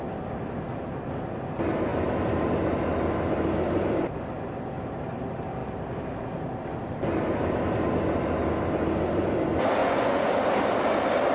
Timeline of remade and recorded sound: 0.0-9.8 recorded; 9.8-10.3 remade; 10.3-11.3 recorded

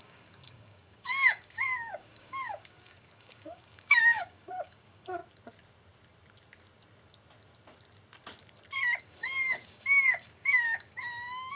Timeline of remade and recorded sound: 0.0-5.2 remade; 5.2-9.0 recorded; 9.0-11.6 remade